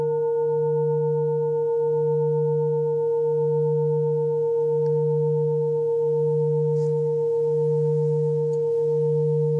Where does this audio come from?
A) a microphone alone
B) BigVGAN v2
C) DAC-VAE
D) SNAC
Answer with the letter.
A